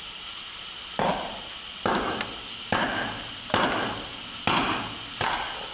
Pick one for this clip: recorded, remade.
recorded